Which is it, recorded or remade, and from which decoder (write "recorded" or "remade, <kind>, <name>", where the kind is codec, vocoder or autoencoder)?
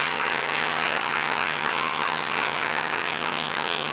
remade, vocoder, HiFi-GAN